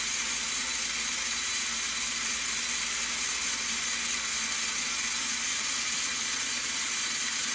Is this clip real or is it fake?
real